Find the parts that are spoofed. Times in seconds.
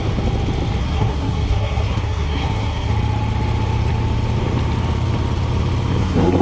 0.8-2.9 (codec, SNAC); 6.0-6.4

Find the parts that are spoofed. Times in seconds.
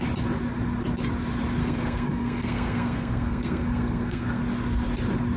1.6-4.4 (codec, SNAC)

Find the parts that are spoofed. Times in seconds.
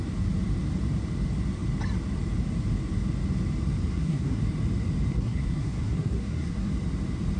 3.9-4.4 (codec, SNAC); 5.1-6.7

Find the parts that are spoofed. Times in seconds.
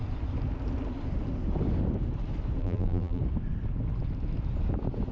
2.6-3.2 (vocoder, BigVGAN v2)